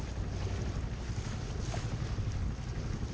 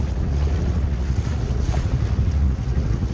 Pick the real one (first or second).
first